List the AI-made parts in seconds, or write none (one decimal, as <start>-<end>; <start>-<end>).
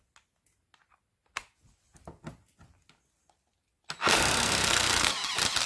4.1-5.1